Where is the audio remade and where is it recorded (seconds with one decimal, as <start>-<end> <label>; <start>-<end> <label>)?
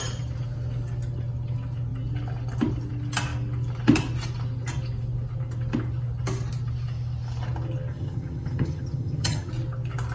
0.0-7.9 recorded; 7.9-9.5 remade; 9.5-10.1 recorded